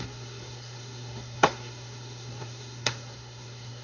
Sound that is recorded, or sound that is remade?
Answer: remade